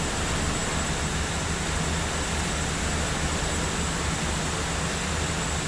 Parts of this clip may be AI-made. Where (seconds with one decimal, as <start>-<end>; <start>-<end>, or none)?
none